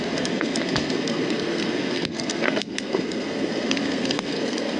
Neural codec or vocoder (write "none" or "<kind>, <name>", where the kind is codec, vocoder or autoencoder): codec, SNAC